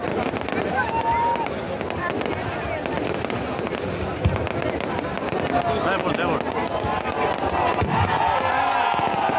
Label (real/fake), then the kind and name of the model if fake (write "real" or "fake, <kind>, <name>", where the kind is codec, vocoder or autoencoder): real